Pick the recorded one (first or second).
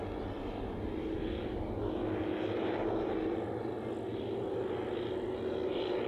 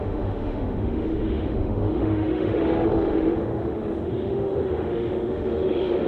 first